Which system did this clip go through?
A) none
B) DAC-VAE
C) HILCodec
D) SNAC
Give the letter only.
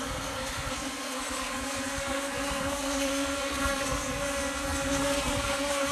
D